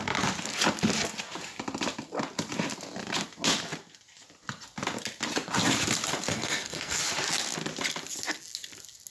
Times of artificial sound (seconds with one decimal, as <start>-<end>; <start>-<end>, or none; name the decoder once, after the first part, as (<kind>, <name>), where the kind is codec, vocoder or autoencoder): 6.3-7.0 (codec, SNAC)